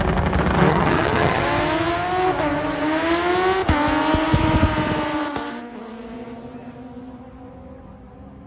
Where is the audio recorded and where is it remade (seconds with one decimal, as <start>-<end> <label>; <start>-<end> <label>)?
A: 0.0-0.7 recorded; 0.7-1.4 remade; 1.4-8.5 recorded